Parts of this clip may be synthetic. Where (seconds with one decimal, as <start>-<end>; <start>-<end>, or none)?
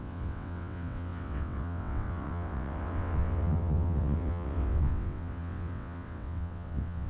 0.0-7.1